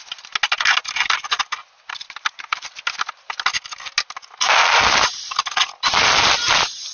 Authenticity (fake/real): real